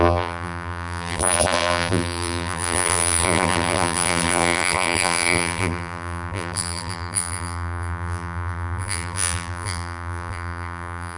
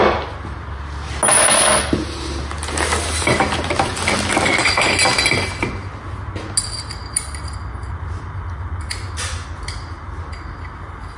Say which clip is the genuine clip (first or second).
second